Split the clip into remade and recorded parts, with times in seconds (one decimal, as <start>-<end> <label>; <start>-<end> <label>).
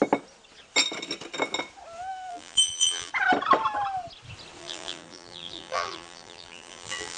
0.0-2.3 recorded; 2.3-3.1 remade; 3.1-4.6 recorded; 4.6-7.2 remade